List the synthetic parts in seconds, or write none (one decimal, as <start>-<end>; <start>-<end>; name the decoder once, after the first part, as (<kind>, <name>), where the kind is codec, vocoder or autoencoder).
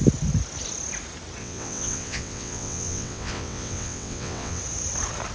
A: 1.4-4.6 (vocoder, WaveNeXt)